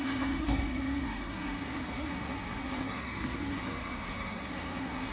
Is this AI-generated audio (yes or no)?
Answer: yes